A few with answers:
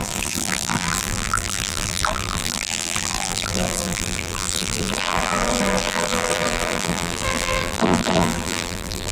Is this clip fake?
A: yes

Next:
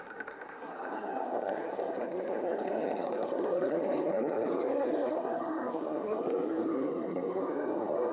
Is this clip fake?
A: yes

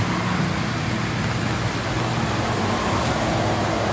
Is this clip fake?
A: no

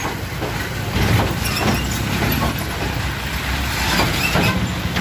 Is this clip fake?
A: no